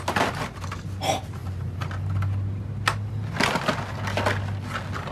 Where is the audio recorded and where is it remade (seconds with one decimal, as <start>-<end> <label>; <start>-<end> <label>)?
0.0-5.1 recorded